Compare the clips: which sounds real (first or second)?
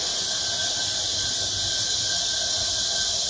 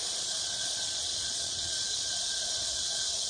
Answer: first